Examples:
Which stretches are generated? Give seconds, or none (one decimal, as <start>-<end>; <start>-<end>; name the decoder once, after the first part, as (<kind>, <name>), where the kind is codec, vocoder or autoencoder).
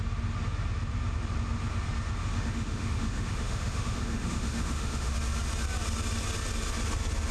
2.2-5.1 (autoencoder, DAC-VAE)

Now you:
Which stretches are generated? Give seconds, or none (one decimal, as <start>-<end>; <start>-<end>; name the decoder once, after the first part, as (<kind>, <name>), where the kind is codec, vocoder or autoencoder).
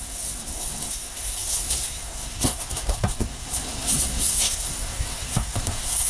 0.0-6.1 (codec, SNAC)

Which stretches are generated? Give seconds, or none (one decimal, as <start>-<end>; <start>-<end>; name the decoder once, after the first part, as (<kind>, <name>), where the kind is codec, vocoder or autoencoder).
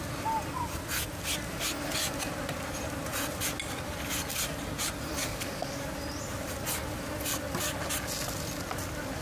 5.2-5.8 (codec, DAC)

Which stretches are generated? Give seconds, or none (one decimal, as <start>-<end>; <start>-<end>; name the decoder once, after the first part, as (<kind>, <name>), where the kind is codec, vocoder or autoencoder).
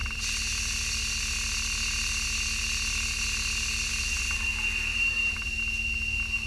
4.9-5.6 (vocoder, BigVGAN v2)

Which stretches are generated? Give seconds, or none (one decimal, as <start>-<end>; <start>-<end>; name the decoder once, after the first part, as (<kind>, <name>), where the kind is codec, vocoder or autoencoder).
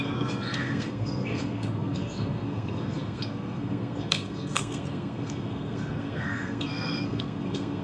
0.0-7.8 (codec, SNAC)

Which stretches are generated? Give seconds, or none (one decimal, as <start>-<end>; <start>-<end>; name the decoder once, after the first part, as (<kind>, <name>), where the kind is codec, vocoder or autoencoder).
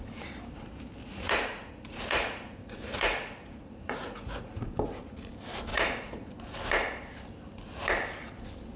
1.0-5.3 (vocoder, Vocos); 5.7-6.3